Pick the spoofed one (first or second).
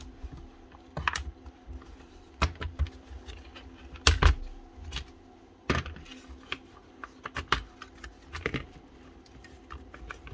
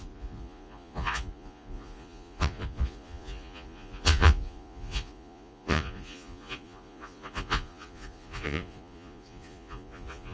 second